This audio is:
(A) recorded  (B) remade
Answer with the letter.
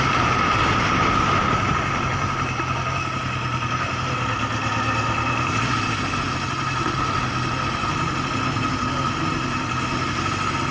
A